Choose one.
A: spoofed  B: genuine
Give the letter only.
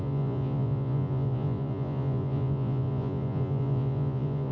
A